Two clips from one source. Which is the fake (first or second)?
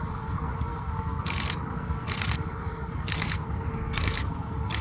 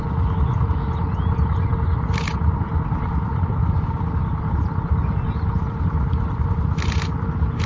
first